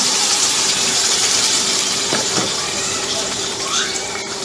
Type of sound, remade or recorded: remade